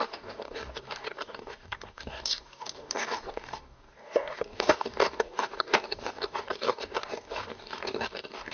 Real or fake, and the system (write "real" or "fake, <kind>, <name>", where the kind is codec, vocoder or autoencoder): fake, codec, DAC